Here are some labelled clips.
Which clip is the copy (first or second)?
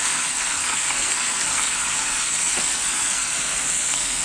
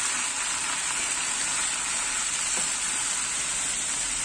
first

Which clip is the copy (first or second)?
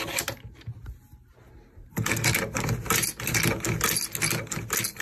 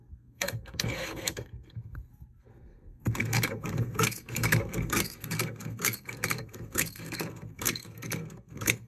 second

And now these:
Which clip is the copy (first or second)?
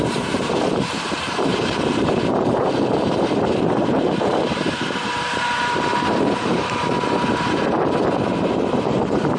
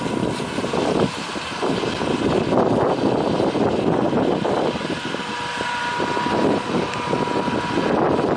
first